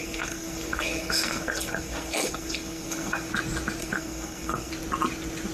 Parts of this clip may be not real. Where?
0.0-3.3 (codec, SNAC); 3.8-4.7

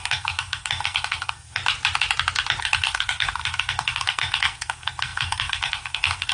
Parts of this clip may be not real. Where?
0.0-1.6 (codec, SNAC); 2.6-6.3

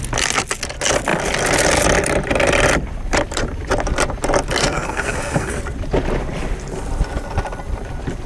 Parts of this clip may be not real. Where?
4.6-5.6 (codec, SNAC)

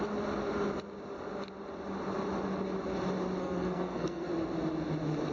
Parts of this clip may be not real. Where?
3.4-4.3 (codec, SNAC)

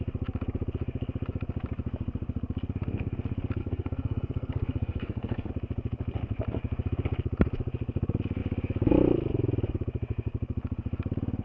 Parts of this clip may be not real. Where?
3.6-5.5 (codec, SNAC)

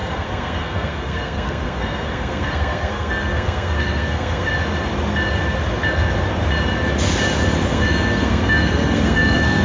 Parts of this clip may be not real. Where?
0.0-4.5 (codec, SNAC); 7.7-9.6

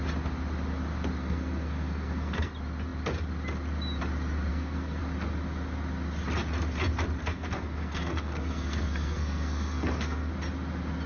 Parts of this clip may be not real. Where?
1.2-2.5 (codec, SNAC); 4.5-5.0; 7.2-10.3